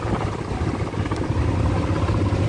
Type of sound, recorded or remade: recorded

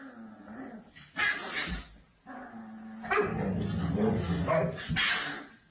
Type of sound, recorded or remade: recorded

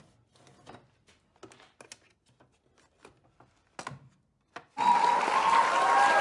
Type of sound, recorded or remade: recorded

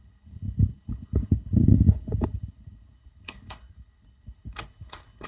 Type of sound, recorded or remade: remade